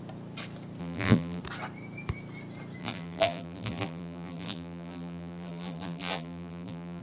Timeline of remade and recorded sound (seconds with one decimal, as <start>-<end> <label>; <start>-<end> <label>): 0.0-0.8 recorded; 0.8-1.4 remade; 1.4-2.8 recorded; 2.8-7.0 remade